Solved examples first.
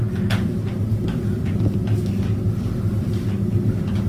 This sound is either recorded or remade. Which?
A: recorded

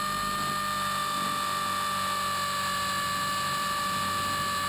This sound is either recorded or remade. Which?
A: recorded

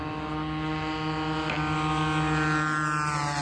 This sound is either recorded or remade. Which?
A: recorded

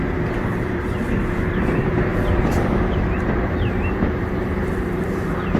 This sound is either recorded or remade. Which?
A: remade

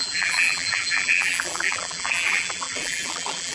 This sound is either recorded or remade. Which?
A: remade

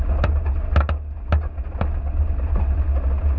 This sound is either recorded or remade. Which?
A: recorded